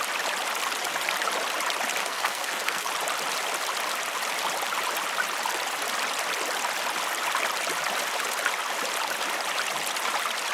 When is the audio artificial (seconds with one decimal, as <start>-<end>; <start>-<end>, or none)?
2.0-2.9